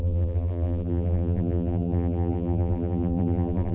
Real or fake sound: fake